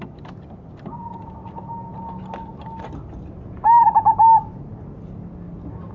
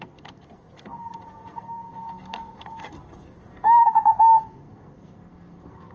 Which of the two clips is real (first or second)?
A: first